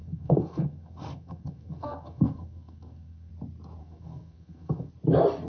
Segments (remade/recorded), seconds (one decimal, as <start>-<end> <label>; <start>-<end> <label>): 0.0-3.3 remade; 3.3-3.8 recorded; 3.8-4.9 remade; 4.9-5.5 recorded